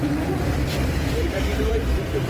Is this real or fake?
fake